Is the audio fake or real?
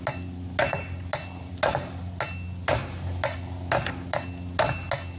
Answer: real